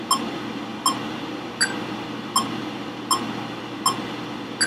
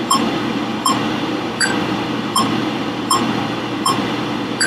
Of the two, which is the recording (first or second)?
first